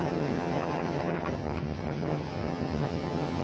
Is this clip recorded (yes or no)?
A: no